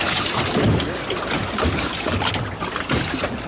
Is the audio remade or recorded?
recorded